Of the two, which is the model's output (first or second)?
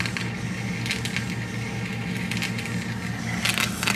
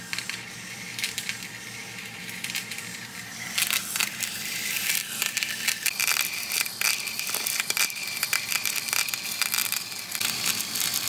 second